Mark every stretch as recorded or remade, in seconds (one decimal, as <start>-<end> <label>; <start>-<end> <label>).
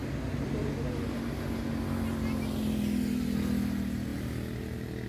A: 0.0-5.1 recorded